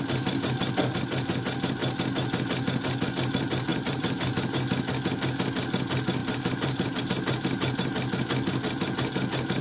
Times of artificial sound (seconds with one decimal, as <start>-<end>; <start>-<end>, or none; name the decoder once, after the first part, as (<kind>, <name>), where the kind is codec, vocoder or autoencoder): 3.7-4.3 (vocoder, BigVGAN v2); 6.2-7.0